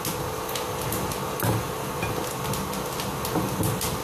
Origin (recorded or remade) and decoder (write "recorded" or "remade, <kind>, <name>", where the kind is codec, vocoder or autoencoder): recorded